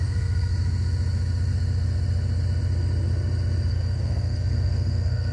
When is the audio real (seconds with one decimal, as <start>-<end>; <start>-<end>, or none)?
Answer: 0.5-3.7